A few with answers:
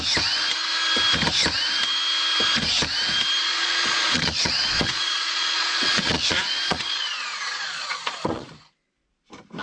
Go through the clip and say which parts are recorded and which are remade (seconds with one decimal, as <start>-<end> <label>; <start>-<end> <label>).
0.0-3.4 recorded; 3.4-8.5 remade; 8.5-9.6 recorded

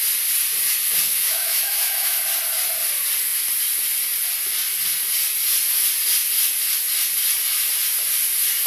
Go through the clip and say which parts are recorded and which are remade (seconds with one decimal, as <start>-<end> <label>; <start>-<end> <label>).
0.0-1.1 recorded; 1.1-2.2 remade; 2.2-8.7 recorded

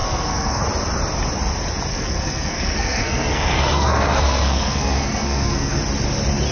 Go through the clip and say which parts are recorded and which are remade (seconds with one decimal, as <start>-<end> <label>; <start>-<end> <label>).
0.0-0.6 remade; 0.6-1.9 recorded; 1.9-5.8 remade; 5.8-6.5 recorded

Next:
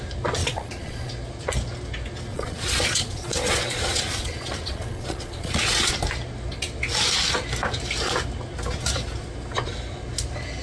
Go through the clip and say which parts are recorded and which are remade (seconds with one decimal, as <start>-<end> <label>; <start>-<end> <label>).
0.0-0.4 recorded; 0.4-1.1 remade; 1.1-2.3 recorded; 2.3-5.9 remade; 5.9-10.6 recorded

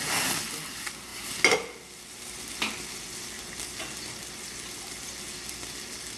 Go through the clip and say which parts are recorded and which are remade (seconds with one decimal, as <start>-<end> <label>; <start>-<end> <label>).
0.0-6.2 recorded

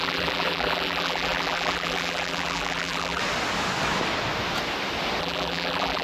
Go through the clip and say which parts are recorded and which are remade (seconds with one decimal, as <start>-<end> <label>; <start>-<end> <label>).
0.0-3.2 remade; 3.2-5.2 recorded; 5.2-6.0 remade